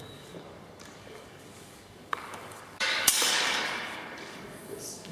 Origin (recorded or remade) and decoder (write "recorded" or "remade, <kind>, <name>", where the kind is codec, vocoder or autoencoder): remade, codec, DAC